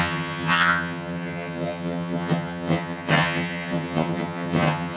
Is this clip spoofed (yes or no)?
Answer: yes